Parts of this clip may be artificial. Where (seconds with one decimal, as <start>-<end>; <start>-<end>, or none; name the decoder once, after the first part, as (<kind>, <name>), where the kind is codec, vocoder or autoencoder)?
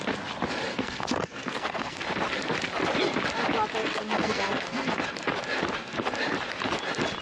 0.7-2.0 (codec, SNAC); 3.8-5.0